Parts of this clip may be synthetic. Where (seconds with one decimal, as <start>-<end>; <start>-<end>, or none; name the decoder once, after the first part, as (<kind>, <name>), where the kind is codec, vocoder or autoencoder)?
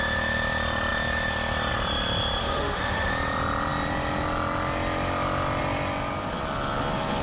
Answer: 2.4-3.1 (autoencoder, DAC-VAE)